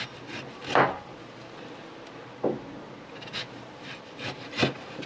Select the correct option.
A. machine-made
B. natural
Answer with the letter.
B